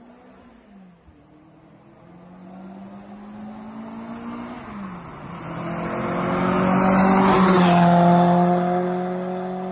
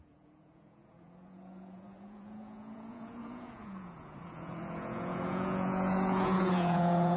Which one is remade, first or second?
second